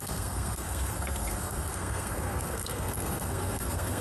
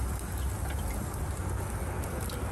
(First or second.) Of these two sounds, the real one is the second